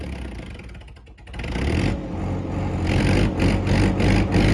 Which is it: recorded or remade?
recorded